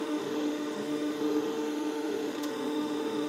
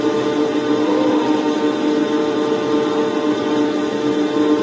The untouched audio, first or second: second